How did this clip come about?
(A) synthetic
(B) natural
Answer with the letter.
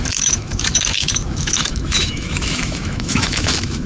A